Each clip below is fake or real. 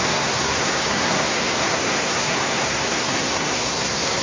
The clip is fake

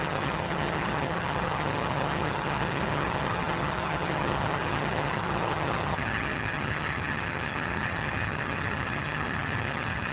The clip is fake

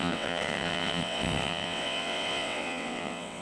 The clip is fake